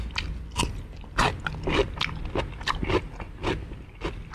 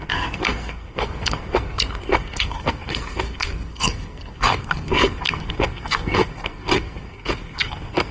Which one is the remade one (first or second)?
second